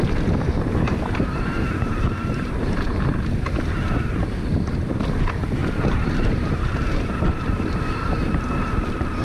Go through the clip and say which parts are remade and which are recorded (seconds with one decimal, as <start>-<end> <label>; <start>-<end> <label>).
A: 0.0-5.6 recorded; 5.6-7.6 remade; 7.6-9.2 recorded